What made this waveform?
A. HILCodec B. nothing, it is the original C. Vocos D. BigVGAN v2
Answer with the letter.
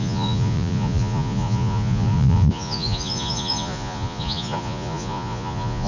C